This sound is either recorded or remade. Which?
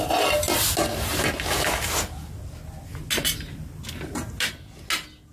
recorded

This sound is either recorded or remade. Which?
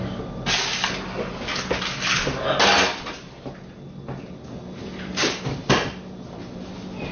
recorded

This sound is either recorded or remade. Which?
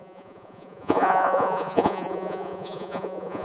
remade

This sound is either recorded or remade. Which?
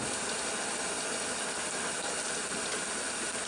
recorded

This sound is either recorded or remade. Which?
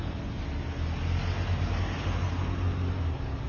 recorded